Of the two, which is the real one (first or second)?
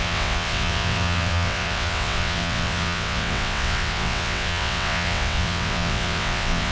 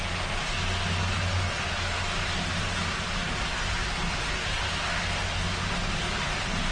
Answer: second